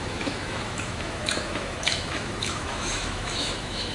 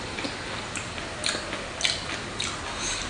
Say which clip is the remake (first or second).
first